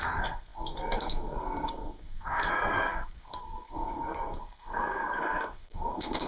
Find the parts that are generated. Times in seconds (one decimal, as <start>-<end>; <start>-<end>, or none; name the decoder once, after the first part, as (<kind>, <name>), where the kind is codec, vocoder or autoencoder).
0.0-6.3 (codec, SNAC)